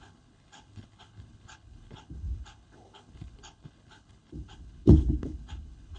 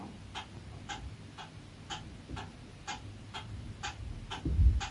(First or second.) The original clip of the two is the second